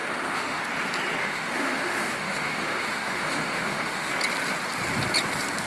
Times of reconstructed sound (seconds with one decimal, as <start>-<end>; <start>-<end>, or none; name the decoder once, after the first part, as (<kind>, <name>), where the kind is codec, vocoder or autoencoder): 0.0-0.6 (autoencoder, DAC-VAE); 1.2-4.1